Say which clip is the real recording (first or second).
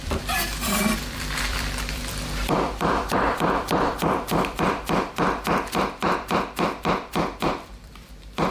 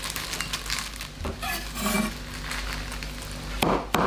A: second